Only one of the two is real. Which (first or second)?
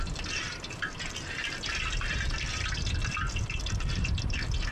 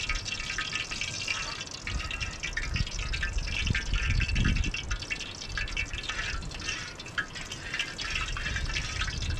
second